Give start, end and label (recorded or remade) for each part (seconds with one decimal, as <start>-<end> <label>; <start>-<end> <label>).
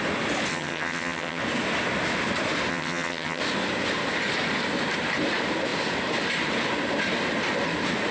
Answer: 0.0-0.5 recorded; 0.5-1.4 remade; 1.4-2.7 recorded; 2.7-3.4 remade; 3.4-8.1 recorded